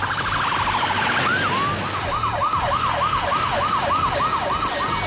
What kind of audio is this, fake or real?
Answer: real